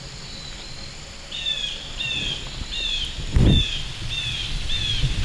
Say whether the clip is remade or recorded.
recorded